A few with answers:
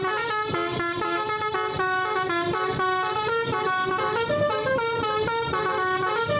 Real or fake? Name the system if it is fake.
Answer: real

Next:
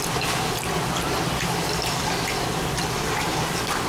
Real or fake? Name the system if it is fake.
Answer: real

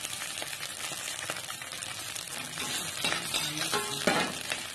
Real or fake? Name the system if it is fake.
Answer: real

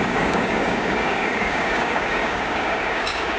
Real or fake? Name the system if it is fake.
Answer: fake, codec, DAC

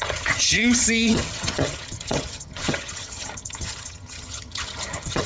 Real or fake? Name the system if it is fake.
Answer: fake, vocoder, HiFi-GAN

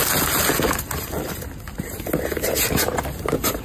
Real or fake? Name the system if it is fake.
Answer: real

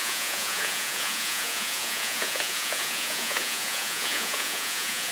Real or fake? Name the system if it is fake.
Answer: fake, vocoder, Vocos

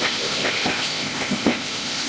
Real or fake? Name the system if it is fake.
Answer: fake, codec, ZipCodec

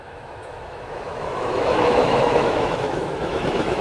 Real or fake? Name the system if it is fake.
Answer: fake, autoencoder, DAC-VAE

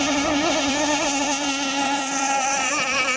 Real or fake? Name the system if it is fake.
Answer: fake, vocoder, BigVGAN v2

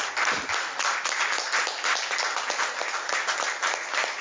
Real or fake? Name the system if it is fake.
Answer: real